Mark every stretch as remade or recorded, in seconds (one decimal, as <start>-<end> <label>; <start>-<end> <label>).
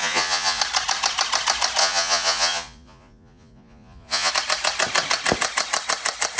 0.0-0.6 remade; 0.6-1.8 recorded; 1.8-4.3 remade; 4.3-6.4 recorded